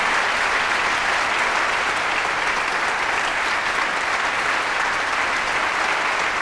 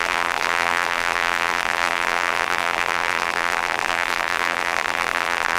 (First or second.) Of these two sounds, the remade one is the second